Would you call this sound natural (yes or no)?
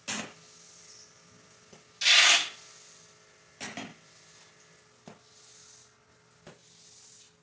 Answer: yes